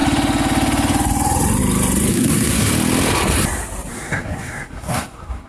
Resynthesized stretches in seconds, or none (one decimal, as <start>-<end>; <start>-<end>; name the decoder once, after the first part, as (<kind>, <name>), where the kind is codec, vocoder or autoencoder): 2.1-2.7 (codec, SNAC); 3.9-5.5